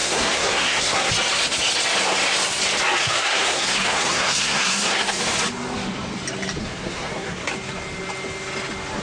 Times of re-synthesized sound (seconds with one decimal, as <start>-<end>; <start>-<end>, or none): 0.0-1.1; 3.0-5.2; 6.6-7.5

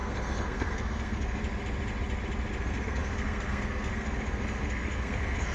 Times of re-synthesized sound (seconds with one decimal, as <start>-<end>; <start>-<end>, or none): 0.0-1.4; 2.6-5.5

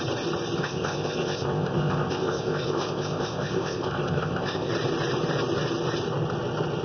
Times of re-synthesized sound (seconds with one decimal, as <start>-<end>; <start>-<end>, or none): 0.6-4.7

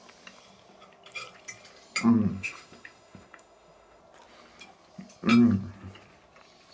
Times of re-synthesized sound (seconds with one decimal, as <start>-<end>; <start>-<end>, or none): 2.3-4.0

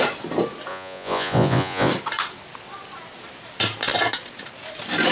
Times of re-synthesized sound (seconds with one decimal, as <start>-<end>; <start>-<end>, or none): 0.7-1.9

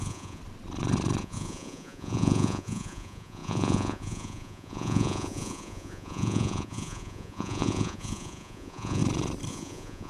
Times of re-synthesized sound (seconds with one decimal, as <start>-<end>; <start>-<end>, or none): 0.0-0.4; 1.2-9.0; 9.5-10.1

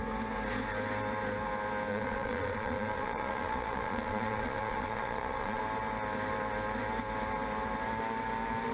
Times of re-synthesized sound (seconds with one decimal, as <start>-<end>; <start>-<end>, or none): 1.9-5.6